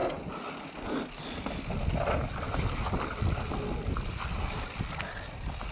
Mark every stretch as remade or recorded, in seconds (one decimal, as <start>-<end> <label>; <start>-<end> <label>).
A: 0.0-5.7 recorded